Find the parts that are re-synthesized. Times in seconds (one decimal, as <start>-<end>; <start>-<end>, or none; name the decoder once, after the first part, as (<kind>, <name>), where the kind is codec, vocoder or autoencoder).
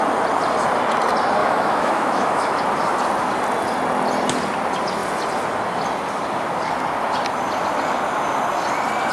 1.4-2.6 (autoencoder, DAC-VAE)